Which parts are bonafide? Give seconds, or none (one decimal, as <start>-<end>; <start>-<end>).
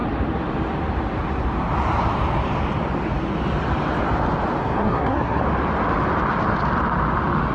0.0-4.6; 5.4-7.5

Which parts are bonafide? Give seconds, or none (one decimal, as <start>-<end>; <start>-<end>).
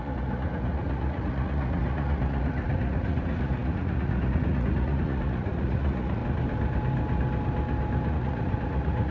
6.2-8.1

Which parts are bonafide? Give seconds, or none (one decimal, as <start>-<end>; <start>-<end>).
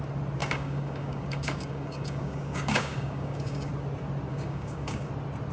0.0-0.4; 3.7-4.3; 5.1-5.5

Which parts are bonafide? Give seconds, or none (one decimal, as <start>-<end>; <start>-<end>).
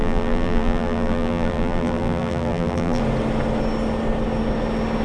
3.0-5.0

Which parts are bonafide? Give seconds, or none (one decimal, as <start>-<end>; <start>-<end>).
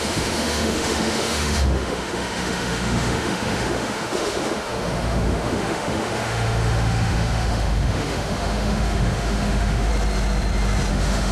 9.9-10.9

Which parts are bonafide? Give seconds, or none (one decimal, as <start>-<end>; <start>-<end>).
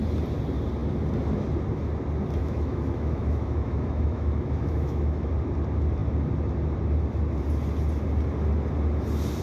0.0-2.4; 5.3-9.4